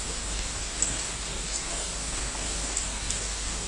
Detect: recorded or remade remade